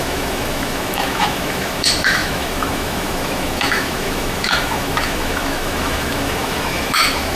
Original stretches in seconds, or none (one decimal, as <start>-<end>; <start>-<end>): none